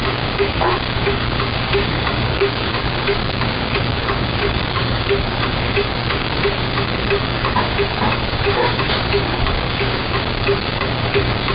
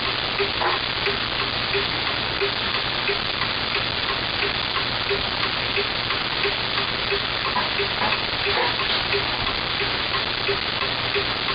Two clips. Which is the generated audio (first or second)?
first